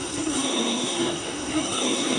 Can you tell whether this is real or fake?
fake